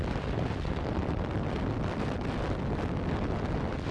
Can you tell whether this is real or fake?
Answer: real